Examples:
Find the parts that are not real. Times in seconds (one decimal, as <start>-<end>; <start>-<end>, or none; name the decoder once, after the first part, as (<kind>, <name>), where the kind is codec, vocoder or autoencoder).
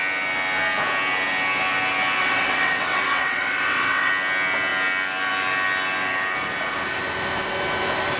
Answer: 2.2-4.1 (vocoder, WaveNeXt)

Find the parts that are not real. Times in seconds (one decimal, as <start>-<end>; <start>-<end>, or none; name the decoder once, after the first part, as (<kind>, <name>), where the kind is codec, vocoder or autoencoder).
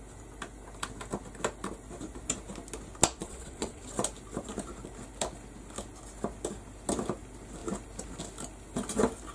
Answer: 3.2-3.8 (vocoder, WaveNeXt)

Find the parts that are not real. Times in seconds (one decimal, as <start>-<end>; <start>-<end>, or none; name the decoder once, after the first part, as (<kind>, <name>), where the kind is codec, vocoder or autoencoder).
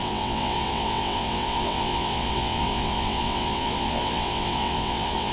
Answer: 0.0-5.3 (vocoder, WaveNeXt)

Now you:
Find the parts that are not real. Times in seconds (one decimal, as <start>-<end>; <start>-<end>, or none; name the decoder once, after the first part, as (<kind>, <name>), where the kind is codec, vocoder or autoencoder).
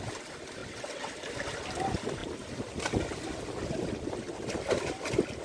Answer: 0.6-1.1 (vocoder, WaveNeXt)